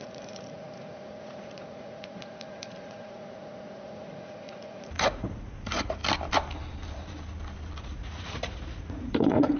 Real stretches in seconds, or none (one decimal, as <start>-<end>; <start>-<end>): 6.0-7.8